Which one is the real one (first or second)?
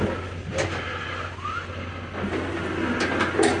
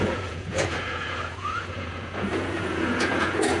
first